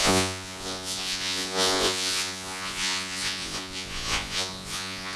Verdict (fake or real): fake